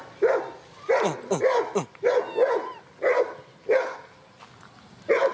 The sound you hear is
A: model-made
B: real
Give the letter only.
B